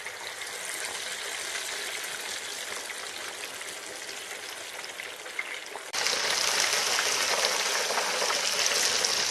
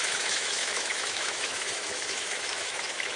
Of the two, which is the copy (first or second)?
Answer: second